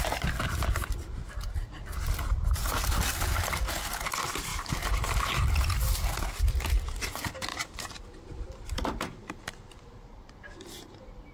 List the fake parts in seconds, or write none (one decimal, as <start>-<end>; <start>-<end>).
4.5-5.1; 7.5-10.4